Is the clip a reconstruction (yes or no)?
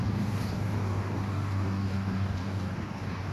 yes